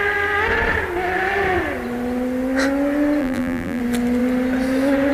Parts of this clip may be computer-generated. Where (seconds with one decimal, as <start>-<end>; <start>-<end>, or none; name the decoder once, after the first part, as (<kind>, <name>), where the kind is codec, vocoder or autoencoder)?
3.2-3.8 (vocoder, BigVGAN v2)